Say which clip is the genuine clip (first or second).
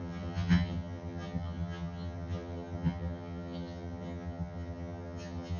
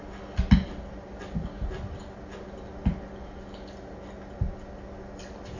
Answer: second